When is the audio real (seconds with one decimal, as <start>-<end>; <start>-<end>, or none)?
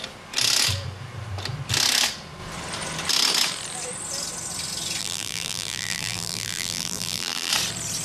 0.0-5.0; 7.5-8.0